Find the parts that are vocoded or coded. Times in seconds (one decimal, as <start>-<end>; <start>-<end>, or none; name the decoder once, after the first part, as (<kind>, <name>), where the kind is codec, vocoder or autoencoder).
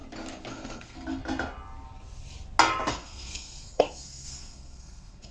0.5-1.2 (codec, SNAC); 2.9-5.3